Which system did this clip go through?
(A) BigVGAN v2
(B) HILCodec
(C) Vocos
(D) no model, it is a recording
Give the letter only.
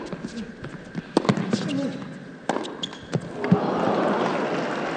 D